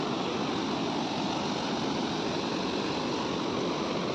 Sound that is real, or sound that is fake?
real